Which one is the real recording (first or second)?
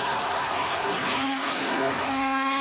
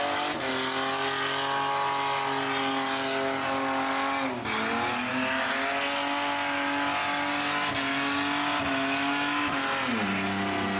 second